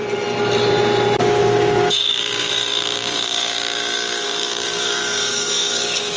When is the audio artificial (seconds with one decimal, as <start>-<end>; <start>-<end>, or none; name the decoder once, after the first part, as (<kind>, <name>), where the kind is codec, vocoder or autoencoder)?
1.2-6.2 (codec, DAC)